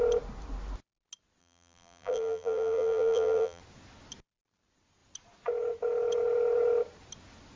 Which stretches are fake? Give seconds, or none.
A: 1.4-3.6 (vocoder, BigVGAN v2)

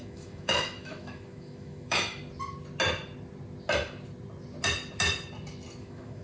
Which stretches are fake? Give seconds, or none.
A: 0.0-2.2 (autoencoder, DAC-VAE); 5.8-6.2